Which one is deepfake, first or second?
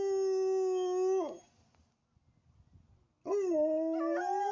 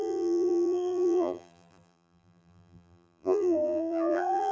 second